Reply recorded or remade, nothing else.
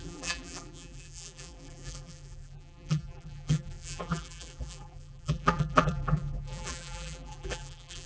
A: remade